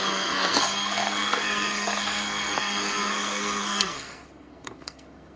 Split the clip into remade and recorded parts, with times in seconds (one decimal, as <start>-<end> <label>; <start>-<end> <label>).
0.0-5.4 remade